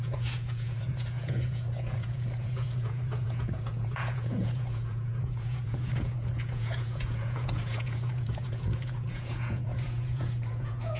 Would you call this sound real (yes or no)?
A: no